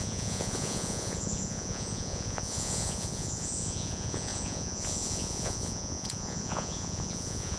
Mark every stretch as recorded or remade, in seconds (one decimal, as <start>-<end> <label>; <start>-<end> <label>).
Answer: 0.0-7.6 remade